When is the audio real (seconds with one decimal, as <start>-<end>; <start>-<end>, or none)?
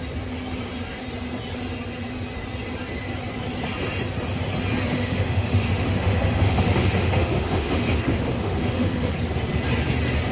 0.0-4.9; 9.1-10.3